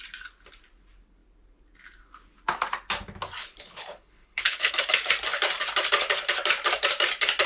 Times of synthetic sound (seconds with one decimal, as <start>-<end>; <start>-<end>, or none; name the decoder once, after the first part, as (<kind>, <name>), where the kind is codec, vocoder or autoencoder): 3.4-4.7 (codec, HILCodec)